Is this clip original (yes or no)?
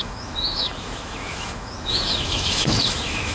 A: no